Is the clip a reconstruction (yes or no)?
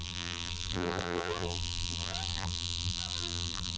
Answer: yes